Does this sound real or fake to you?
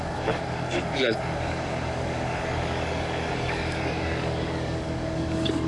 fake